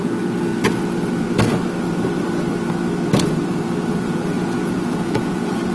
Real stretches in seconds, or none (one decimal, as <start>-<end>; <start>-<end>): 0.5-3.9

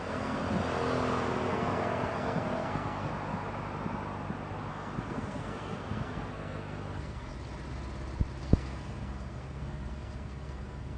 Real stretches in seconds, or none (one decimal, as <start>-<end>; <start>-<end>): 0.4-1.5; 3.1-4.7; 7.3-8.4

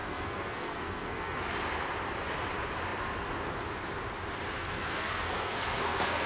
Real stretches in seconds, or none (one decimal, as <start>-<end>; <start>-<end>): 1.4-4.6

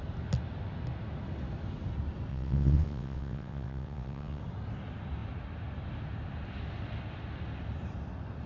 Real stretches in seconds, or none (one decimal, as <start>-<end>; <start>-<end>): 0.0-2.3; 4.4-8.5